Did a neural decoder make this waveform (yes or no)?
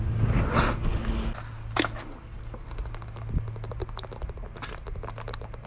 no